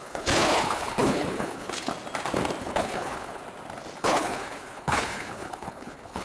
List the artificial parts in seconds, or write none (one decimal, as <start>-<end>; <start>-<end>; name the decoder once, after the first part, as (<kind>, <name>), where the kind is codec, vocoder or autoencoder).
0.0-1.9 (codec, HILCodec); 2.6-3.4; 4.0-6.2